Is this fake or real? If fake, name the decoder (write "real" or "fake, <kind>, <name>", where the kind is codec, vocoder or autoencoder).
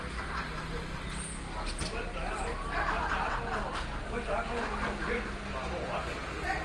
real